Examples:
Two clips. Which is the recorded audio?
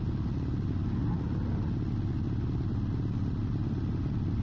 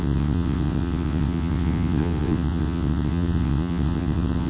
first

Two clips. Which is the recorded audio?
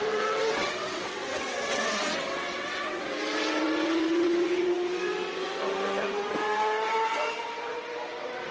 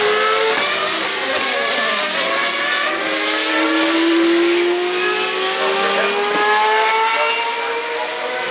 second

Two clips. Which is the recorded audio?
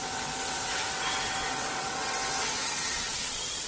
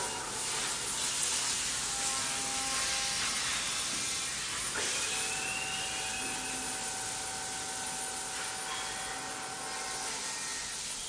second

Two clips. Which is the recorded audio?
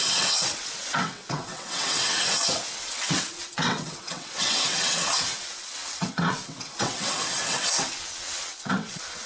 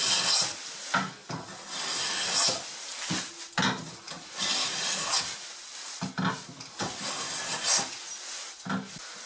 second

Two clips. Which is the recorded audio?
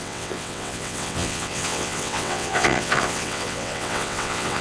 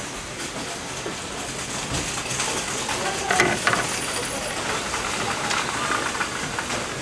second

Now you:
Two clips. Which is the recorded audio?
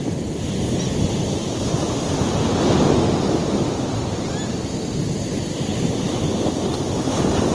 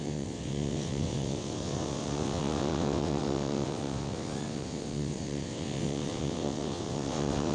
first